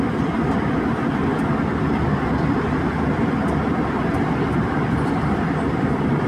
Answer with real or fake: fake